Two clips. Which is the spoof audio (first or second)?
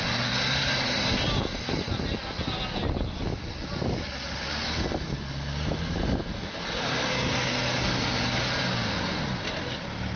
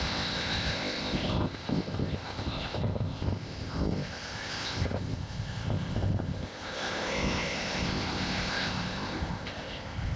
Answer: second